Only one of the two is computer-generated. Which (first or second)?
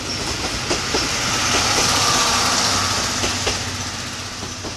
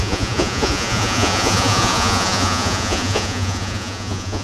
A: second